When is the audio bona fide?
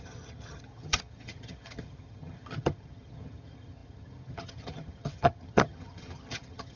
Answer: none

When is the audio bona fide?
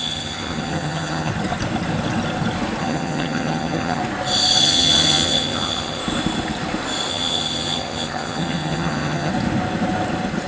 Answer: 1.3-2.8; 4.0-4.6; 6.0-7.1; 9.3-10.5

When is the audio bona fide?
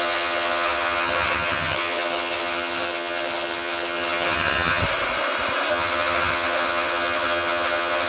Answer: 4.8-5.7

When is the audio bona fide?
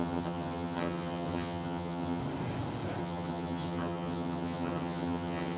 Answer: 2.2-3.0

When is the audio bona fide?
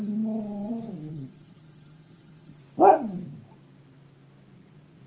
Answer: 0.0-1.1; 2.6-5.1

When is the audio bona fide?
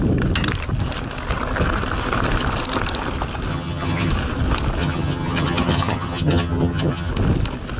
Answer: 0.0-3.5; 4.1-4.8; 7.1-7.8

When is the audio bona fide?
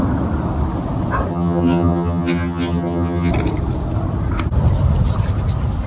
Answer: 0.0-1.3; 3.3-5.9